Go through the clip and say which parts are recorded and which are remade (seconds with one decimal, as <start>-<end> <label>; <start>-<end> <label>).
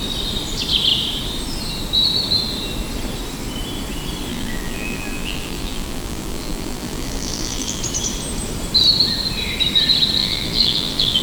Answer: 0.0-4.3 recorded; 4.3-7.8 remade; 7.8-10.2 recorded; 10.2-11.2 remade